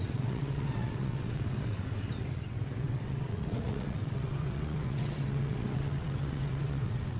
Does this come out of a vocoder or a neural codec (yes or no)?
yes